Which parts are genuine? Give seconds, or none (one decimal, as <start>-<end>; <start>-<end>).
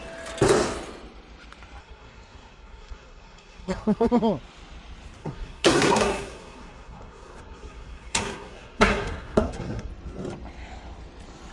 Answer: 0.0-1.8; 4.1-5.2; 9.9-11.5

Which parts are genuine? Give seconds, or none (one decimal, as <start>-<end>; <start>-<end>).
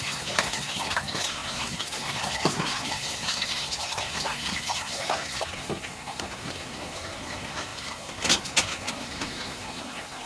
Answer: none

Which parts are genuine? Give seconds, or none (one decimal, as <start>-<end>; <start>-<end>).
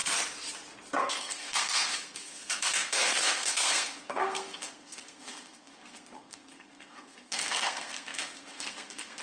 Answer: 0.0-1.0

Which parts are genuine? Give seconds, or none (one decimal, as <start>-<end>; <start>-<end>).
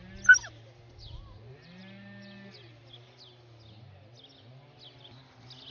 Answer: 0.0-5.7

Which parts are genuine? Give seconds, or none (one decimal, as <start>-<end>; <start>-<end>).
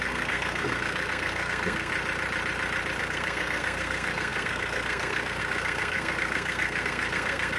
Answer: 1.9-3.0